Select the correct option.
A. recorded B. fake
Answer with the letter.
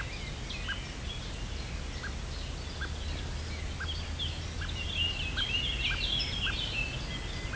A